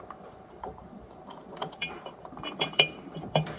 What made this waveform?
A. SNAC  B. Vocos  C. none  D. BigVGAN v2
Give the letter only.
D